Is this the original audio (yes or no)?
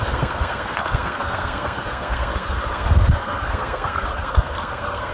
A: no